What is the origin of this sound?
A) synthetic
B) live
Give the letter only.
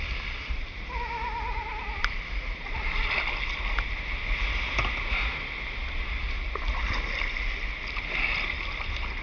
B